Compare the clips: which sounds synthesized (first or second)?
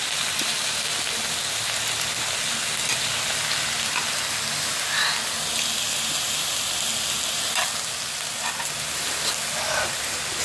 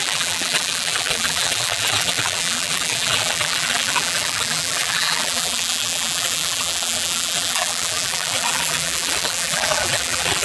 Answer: second